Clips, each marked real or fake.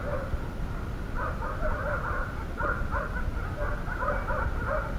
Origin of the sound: real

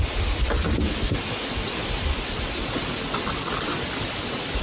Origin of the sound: real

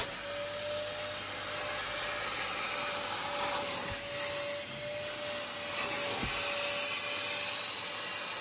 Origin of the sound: real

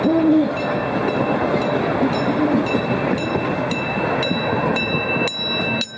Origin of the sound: real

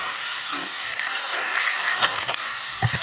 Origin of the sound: fake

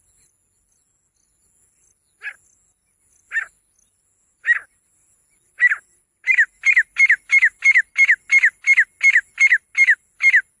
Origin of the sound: real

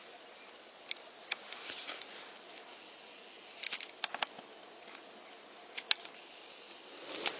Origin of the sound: real